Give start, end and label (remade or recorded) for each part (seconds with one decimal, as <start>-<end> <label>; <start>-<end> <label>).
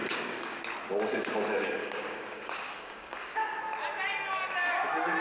0.0-0.6 remade; 0.6-1.8 recorded; 1.8-3.6 remade; 3.6-5.2 recorded